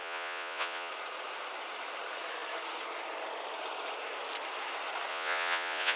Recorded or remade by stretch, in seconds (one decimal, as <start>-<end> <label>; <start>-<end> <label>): 0.0-0.9 remade; 0.9-5.1 recorded; 5.1-6.0 remade